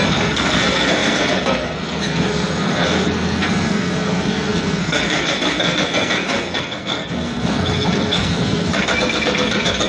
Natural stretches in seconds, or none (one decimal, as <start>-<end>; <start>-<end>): none